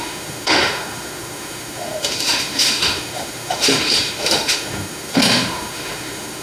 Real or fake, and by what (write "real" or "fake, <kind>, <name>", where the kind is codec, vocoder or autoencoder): fake, autoencoder, DAC-VAE